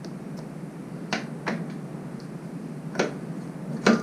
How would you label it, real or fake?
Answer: real